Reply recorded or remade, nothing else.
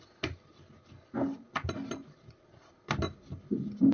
recorded